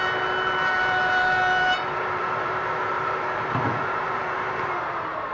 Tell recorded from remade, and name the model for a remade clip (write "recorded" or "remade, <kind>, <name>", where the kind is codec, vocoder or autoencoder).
remade, vocoder, BigVGAN v2